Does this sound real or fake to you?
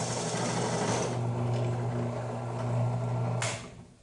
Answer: real